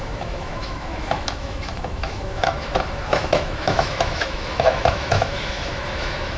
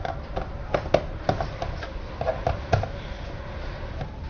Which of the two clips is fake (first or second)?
first